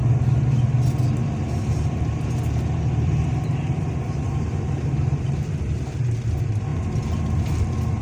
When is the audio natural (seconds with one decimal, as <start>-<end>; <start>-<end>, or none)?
0.0-1.2; 6.0-6.7; 7.3-8.0